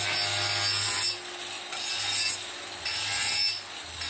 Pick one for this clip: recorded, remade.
recorded